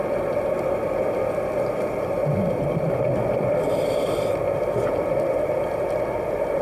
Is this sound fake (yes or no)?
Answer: no